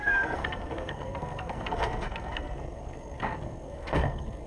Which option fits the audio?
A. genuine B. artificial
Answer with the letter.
B